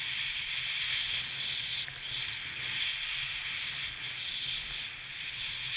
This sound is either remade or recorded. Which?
recorded